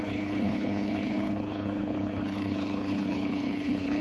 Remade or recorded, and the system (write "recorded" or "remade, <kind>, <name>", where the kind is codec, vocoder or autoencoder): remade, codec, HILCodec